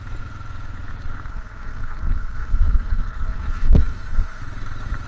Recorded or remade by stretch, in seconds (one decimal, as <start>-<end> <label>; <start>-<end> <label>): 0.0-1.3 recorded; 1.3-4.4 remade; 4.4-5.1 recorded